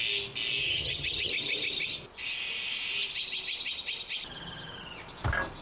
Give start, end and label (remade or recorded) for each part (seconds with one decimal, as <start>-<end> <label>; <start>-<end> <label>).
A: 0.0-0.6 recorded; 0.6-1.3 remade; 1.3-5.6 recorded

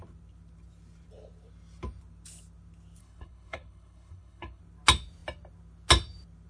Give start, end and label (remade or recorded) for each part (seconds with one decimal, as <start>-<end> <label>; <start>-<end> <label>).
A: 0.0-3.0 recorded; 3.0-4.6 remade; 4.6-6.5 recorded

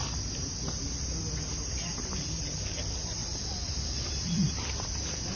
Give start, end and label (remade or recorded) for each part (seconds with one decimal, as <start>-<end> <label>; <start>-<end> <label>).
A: 0.0-3.2 recorded; 3.2-4.5 remade; 4.5-5.4 recorded

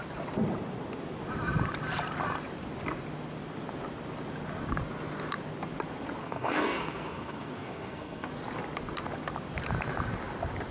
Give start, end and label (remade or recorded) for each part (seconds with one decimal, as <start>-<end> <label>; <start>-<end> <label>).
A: 0.0-6.2 recorded; 6.2-8.3 remade; 8.3-10.7 recorded

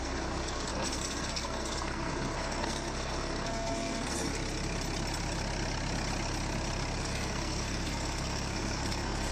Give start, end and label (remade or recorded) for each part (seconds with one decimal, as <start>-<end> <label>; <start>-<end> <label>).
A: 0.0-4.3 remade; 4.3-7.0 recorded; 7.0-9.3 remade

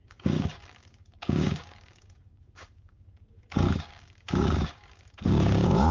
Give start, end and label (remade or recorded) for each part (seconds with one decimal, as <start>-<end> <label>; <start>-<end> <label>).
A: 0.0-5.9 remade

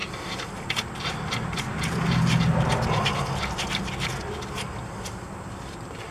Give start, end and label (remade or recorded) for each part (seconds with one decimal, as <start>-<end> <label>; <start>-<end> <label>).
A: 0.0-6.1 recorded

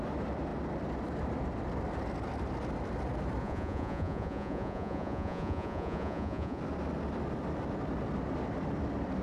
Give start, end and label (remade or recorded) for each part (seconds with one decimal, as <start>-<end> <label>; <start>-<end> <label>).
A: 0.0-3.4 recorded; 3.4-6.6 remade; 6.6-9.2 recorded